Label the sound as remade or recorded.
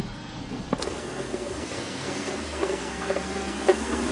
remade